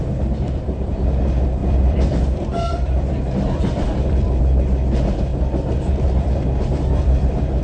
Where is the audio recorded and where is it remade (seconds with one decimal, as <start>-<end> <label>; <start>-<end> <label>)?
0.0-1.0 remade; 1.0-1.6 recorded; 1.6-4.4 remade; 4.4-5.3 recorded; 5.3-7.6 remade